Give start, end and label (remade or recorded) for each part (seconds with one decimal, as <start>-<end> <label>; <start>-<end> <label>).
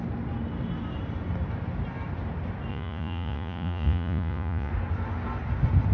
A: 0.0-2.7 recorded; 2.7-4.7 remade; 4.7-5.9 recorded